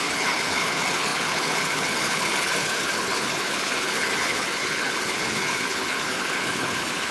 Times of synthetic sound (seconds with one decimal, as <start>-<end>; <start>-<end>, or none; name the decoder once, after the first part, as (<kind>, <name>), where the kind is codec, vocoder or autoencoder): 0.0-7.1 (codec, HILCodec)